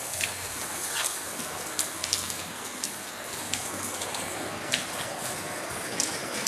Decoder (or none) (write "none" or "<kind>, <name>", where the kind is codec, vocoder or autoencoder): codec, SNAC